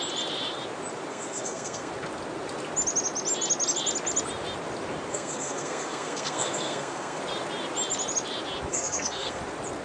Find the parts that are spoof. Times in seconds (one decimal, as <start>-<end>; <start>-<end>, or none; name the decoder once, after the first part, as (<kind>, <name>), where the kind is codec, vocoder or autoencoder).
1.1-1.9 (codec, SNAC); 5.1-7.2; 8.7-9.4